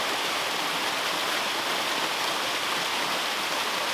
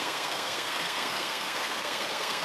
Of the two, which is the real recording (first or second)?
first